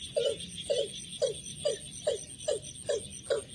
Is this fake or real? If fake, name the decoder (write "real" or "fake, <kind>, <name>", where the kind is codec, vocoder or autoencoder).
real